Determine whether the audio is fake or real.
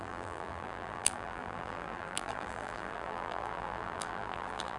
fake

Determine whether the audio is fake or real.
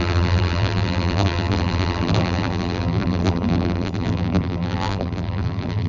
fake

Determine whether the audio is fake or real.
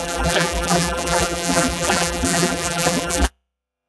fake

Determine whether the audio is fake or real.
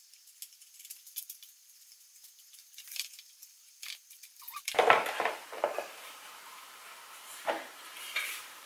fake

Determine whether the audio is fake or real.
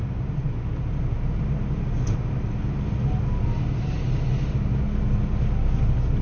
real